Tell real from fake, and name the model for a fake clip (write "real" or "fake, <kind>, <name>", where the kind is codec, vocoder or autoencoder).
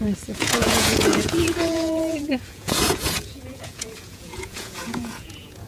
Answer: fake, vocoder, Vocos